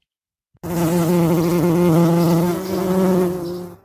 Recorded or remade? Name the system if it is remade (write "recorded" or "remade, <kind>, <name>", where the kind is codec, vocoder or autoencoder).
recorded